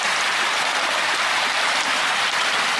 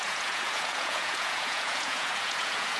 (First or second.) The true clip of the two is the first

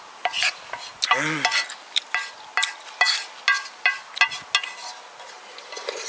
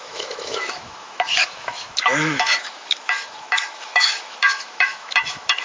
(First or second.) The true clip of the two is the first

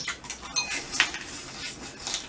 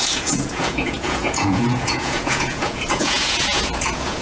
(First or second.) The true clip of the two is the first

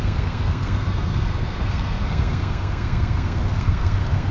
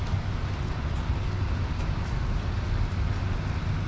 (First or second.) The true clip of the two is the second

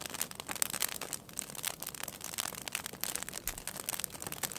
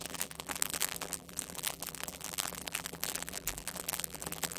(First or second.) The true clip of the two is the first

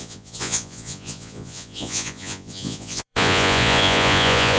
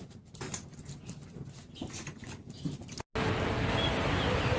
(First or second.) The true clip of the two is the second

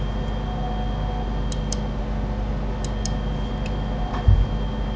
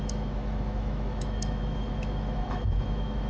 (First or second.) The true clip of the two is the first